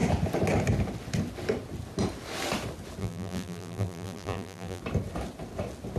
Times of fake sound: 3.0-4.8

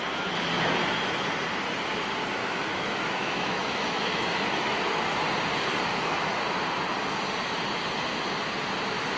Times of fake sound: 2.4-5.2; 5.9-6.4

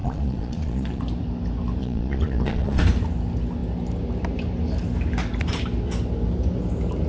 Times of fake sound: 0.0-1.0; 1.8-2.8